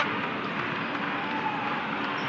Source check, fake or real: real